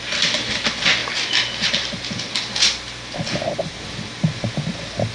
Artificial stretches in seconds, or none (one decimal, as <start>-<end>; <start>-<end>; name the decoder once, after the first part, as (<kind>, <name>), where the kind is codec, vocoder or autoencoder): none